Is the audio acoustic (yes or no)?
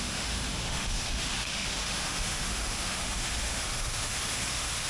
no